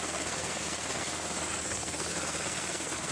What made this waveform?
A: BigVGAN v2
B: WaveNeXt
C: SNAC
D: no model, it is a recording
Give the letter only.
C